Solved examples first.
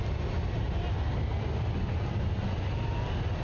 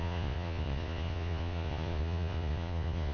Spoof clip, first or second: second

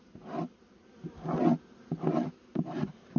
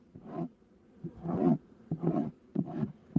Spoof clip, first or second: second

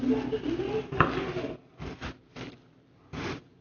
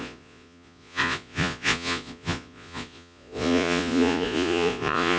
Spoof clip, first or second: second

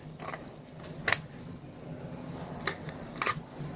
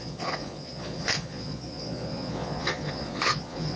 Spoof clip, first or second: second